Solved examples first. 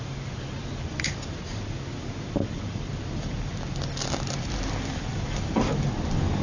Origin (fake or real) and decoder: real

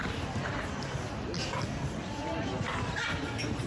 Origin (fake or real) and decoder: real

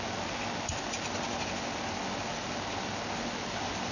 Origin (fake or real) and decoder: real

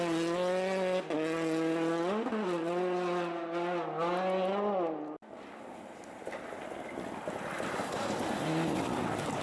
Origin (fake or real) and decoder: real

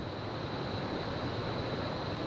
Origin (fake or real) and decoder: real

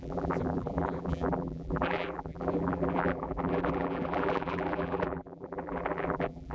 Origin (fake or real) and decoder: fake, vocoder, BigVGAN v2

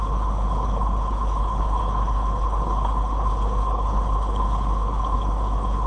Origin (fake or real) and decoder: fake, codec, HILCodec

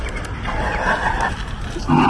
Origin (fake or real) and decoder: real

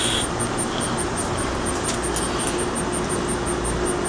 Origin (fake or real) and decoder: real